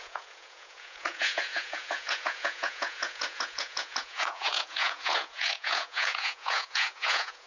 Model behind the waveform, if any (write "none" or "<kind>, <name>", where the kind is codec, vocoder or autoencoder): vocoder, Vocos